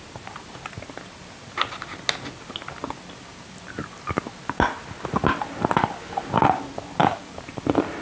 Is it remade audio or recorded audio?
recorded